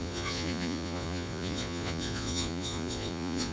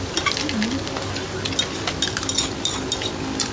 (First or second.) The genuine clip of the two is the second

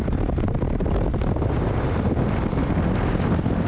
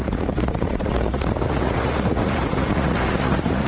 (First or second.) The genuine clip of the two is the first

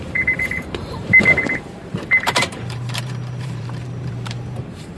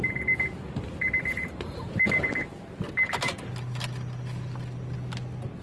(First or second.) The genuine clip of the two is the second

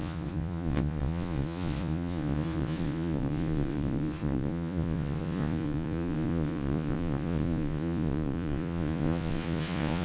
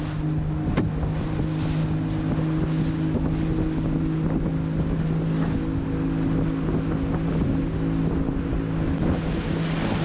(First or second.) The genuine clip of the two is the second